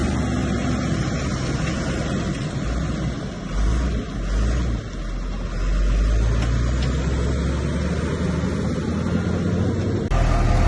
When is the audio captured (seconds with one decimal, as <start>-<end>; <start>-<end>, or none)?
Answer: 0.0-0.4; 3.7-10.7